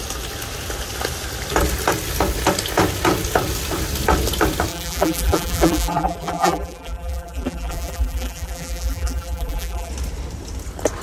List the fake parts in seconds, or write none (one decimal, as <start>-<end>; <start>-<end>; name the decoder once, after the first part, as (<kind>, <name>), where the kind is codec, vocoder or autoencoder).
4.7-9.9 (vocoder, BigVGAN v2)